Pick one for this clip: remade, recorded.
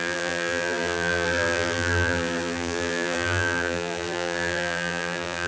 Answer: remade